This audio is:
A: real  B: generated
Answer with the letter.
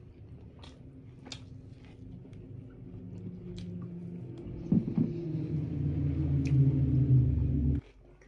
A